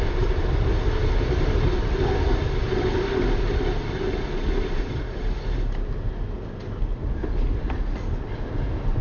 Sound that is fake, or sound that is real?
real